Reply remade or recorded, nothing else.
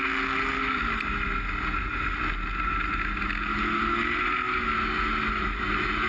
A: recorded